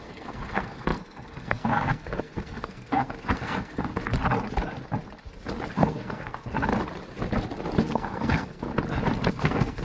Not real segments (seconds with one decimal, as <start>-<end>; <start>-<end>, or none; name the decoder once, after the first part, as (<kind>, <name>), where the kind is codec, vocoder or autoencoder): 0.0-3.9 (codec, SNAC); 5.7-6.7; 7.8-8.7; 9.3-9.8